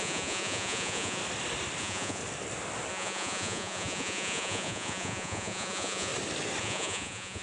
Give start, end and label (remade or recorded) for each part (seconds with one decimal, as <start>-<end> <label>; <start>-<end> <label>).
0.0-1.2 remade; 1.2-1.8 recorded; 1.8-2.2 remade; 2.2-2.9 recorded; 2.9-6.1 remade; 6.1-6.6 recorded; 6.6-7.4 remade